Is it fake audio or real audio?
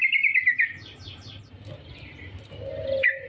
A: real